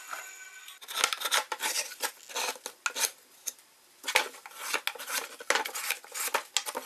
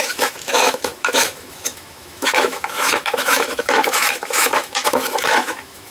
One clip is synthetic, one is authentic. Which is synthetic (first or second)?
second